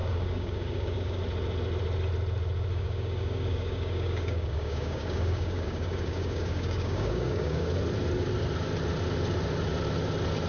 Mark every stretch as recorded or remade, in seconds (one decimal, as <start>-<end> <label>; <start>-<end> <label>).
0.0-1.2 remade; 1.2-2.7 recorded; 2.7-7.7 remade; 7.7-10.5 recorded